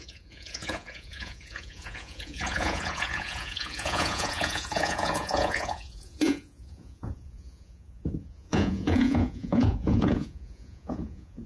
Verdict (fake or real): fake